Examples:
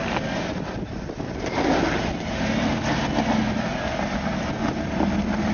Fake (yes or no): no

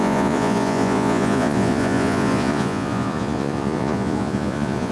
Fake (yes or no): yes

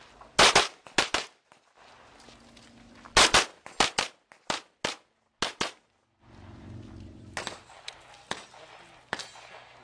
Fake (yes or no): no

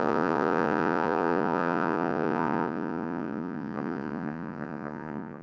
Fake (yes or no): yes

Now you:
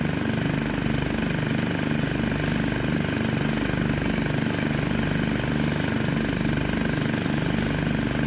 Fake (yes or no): no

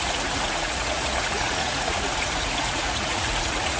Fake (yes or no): yes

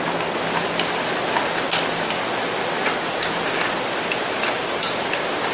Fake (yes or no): no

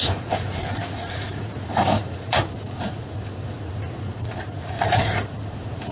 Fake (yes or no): yes